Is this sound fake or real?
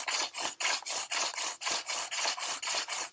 real